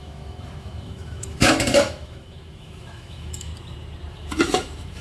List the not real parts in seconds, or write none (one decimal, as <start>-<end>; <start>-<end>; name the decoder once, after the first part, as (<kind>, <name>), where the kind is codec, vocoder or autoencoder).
0.0-3.5 (autoencoder, DAC-VAE); 4.1-5.0